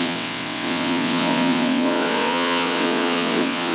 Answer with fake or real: fake